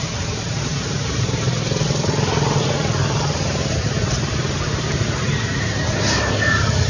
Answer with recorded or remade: remade